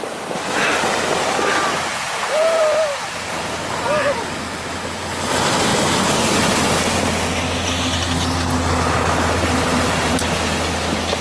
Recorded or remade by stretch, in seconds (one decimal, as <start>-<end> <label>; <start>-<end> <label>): 0.0-1.9 recorded; 1.9-2.6 remade; 2.6-11.2 recorded